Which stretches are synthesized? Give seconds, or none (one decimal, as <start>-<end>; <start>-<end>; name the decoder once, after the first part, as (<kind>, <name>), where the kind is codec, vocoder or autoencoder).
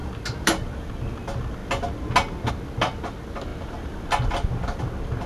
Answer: none